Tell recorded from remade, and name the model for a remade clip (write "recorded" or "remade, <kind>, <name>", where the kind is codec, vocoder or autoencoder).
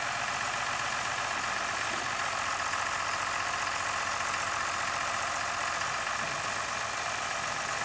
recorded